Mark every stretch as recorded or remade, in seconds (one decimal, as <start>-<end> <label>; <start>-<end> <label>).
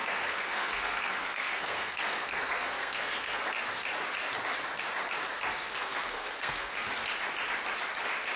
0.0-3.4 remade; 3.4-5.5 recorded; 5.5-6.9 remade; 6.9-8.4 recorded